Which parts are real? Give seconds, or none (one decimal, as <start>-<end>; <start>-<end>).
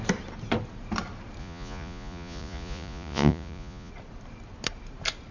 0.0-1.4; 3.9-5.3